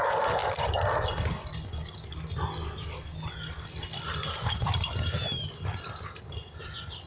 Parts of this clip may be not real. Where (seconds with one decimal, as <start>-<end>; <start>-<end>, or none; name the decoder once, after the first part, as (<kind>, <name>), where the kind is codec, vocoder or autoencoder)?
none